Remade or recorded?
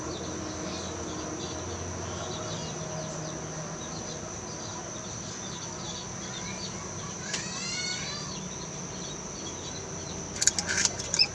recorded